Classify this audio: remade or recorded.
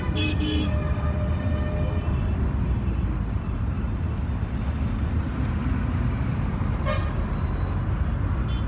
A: recorded